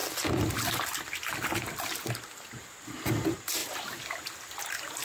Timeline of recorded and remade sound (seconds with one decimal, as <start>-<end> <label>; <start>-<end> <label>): 0.0-5.0 recorded